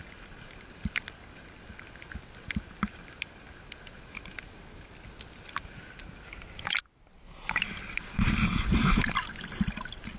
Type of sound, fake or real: real